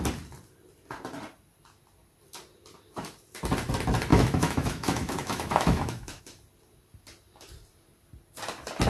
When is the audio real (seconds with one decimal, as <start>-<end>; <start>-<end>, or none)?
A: 0.0-4.1; 6.2-8.9

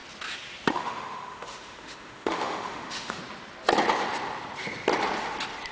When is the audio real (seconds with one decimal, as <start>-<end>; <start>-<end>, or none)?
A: 0.0-0.7; 3.2-5.7